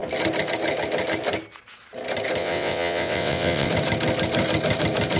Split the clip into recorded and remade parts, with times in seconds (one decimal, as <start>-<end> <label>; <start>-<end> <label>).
0.0-2.4 recorded; 2.4-3.7 remade; 3.7-5.2 recorded